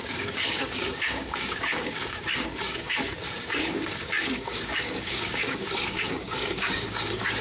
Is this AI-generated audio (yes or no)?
yes